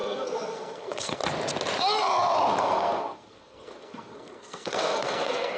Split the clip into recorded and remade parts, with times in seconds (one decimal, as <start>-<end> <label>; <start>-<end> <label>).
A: 0.0-1.2 remade; 1.2-2.6 recorded; 2.6-5.6 remade